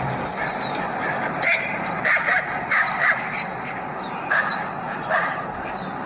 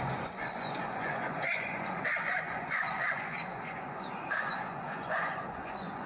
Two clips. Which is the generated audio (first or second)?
second